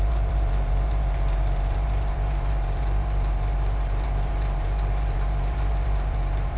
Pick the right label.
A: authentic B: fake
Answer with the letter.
B